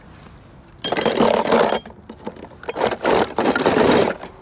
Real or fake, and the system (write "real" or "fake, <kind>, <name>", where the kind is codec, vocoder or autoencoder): real